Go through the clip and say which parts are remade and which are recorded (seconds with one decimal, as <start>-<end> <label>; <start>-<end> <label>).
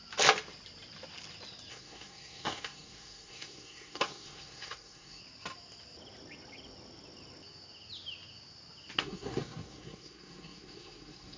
0.0-1.7 recorded; 1.7-5.2 remade; 5.2-9.0 recorded; 9.0-11.4 remade